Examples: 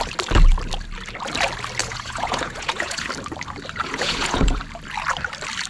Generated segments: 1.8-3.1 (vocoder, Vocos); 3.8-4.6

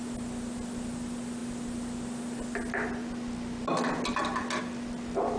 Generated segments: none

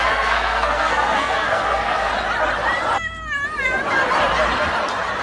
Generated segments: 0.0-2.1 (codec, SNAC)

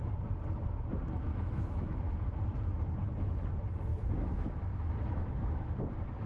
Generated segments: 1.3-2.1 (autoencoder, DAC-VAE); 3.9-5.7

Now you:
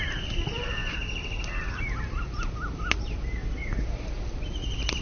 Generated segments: none

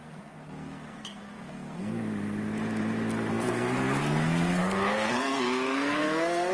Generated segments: 0.0-2.0 (codec, SNAC); 3.3-6.5

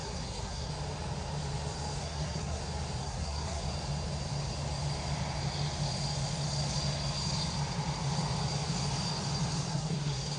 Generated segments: 0.0-0.7 (codec, SNAC); 2.0-2.6; 3.0-3.6; 9.7-10.4

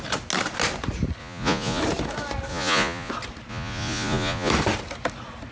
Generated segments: 1.2-1.8 (vocoder, Vocos); 2.5-3.1; 3.5-4.5